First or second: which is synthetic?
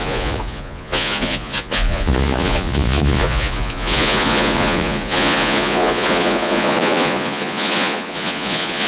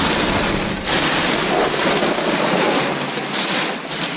first